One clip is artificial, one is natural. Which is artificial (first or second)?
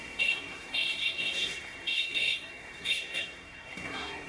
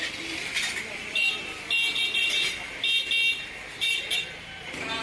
first